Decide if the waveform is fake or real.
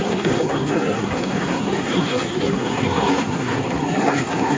fake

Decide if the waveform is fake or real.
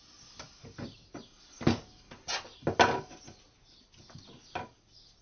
real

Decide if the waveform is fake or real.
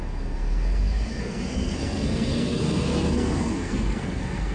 fake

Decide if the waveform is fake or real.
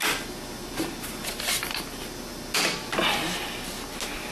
real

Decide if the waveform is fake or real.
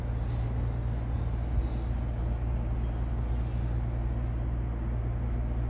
real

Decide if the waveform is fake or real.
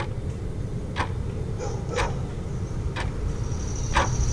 real